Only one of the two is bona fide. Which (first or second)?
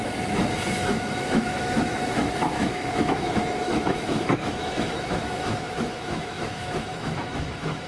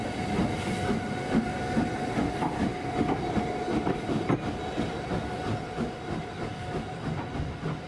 second